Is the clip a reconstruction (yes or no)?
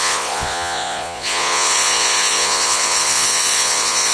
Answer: yes